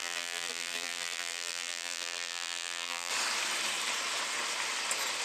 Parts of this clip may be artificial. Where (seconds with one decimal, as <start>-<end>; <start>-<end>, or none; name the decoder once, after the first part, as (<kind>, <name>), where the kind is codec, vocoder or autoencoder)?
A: 0.0-3.1 (vocoder, BigVGAN v2)